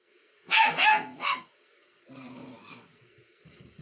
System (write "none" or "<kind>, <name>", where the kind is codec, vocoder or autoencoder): codec, SNAC